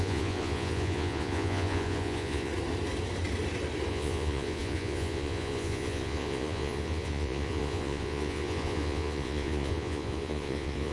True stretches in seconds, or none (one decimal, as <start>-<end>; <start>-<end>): 2.5-3.9